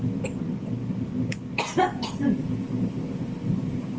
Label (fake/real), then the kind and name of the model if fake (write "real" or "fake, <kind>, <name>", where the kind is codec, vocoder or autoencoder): real